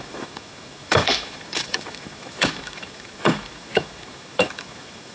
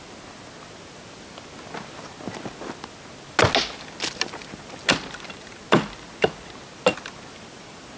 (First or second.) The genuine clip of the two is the second